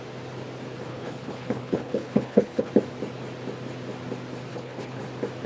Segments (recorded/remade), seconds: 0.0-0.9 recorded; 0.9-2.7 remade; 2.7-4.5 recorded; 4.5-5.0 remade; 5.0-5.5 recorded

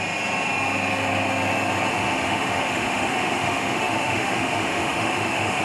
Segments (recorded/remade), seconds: 0.0-1.9 recorded; 1.9-5.6 remade

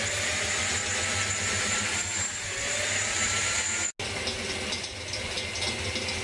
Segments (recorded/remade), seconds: 0.0-6.2 recorded